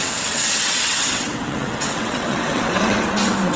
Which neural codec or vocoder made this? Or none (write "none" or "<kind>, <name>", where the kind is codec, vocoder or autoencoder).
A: vocoder, WaveNeXt